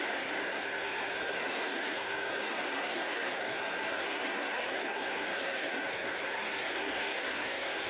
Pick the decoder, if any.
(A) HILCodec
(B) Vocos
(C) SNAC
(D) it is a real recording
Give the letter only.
C